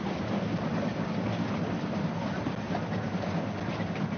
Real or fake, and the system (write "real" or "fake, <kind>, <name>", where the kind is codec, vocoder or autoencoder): real